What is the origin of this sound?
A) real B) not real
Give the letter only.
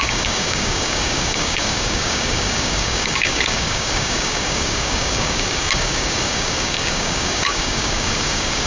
B